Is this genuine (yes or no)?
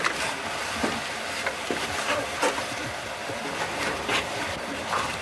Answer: yes